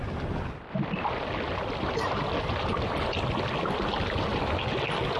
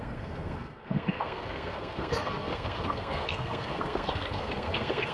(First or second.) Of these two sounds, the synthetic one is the second